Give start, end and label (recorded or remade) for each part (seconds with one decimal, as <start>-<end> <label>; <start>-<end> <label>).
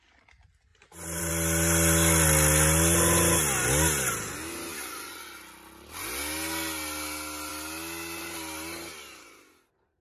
0.0-0.7 recorded; 0.7-1.3 remade; 1.3-10.0 recorded